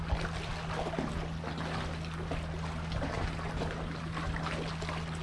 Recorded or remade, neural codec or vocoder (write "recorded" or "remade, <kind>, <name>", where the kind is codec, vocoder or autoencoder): recorded